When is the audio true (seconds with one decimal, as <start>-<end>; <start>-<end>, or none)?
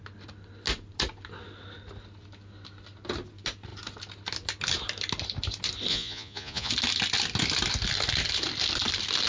0.0-5.9; 6.7-9.3